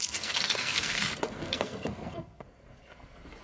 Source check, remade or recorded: remade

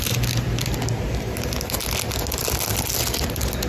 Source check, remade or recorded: recorded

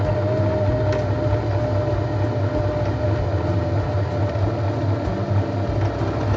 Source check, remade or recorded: recorded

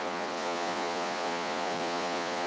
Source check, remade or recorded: remade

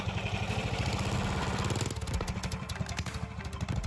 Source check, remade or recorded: recorded